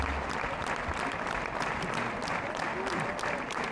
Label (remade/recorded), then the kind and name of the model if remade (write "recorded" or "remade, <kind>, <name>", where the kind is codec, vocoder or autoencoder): recorded